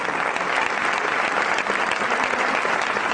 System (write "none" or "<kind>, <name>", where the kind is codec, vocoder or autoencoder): none